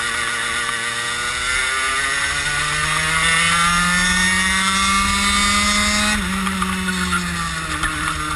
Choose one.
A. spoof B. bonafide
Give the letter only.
B